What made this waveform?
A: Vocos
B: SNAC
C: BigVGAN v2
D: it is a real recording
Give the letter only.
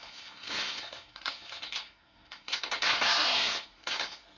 B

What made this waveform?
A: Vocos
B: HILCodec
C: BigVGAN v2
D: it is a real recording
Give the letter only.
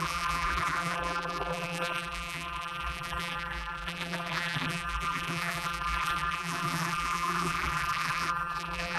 C